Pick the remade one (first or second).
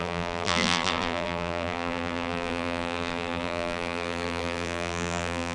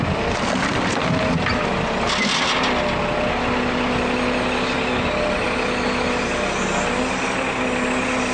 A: first